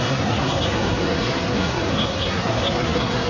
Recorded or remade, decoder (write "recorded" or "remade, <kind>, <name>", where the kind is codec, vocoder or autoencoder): remade, codec, SNAC